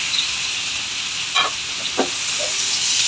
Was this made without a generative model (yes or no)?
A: yes